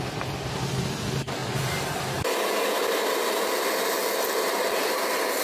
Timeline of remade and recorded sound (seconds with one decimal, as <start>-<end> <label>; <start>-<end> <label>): 0.0-5.4 recorded